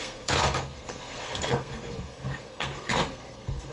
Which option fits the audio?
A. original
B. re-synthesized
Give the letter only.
B